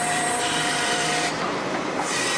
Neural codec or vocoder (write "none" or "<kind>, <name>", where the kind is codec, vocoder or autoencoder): vocoder, BigVGAN v2